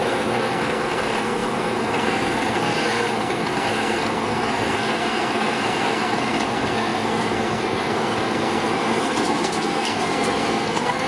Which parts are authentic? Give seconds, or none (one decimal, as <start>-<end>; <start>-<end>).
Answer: none